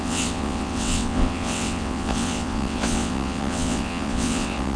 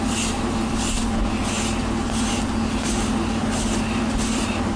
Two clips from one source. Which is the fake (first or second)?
first